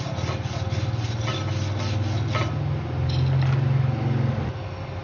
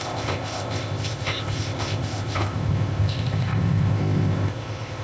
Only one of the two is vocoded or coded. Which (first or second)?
second